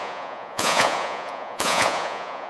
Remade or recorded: remade